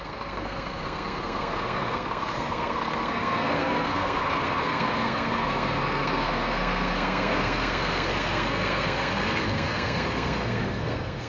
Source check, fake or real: fake